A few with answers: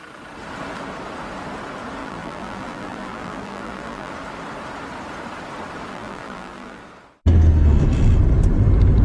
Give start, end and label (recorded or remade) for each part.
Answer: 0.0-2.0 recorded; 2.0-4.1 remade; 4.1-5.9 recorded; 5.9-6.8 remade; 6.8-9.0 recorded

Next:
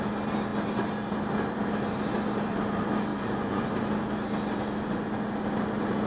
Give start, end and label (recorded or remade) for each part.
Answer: 0.0-3.1 recorded; 3.1-3.7 remade; 3.7-6.1 recorded

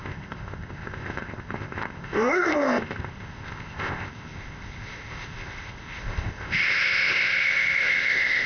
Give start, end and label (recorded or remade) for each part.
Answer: 0.0-8.5 remade

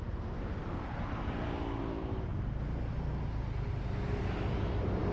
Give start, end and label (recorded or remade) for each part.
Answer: 0.0-5.1 recorded

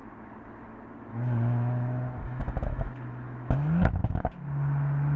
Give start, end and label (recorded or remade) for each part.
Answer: 0.0-1.1 recorded; 1.1-4.2 remade; 4.2-5.2 recorded

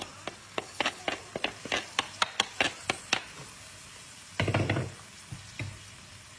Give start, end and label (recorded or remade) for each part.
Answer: 0.0-0.4 recorded; 0.4-1.0 remade; 1.0-6.4 recorded

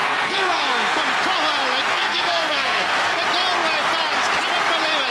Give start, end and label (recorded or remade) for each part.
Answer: 0.0-1.0 remade; 1.0-1.9 recorded; 1.9-3.2 remade; 3.2-5.1 recorded

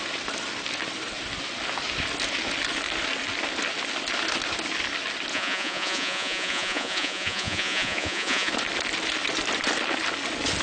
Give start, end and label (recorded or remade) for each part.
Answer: 0.0-5.3 recorded; 5.3-8.5 remade; 8.5-10.6 recorded